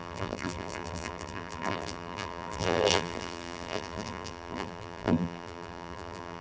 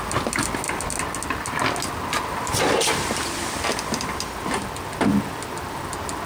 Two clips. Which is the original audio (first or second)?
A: second